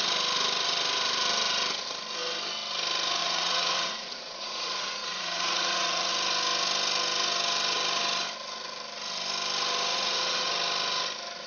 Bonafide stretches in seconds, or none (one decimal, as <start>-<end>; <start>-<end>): 0.0-3.2; 6.1-9.9; 10.5-11.5